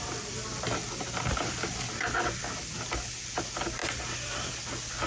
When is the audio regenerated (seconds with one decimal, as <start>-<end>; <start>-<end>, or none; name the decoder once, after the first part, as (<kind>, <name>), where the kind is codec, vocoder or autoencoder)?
none